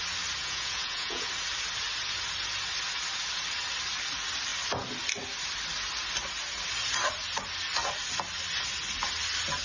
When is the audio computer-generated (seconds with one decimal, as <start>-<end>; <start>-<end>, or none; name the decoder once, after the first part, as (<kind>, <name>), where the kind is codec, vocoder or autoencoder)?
0.4-1.3 (vocoder, Vocos)